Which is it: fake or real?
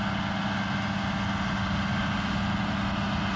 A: real